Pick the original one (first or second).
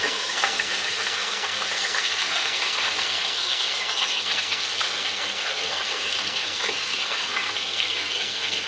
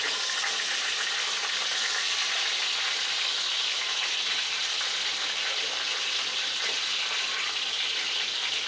second